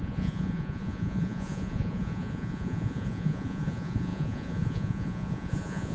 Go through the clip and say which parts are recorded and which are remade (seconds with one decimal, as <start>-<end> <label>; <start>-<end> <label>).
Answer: 0.0-5.9 remade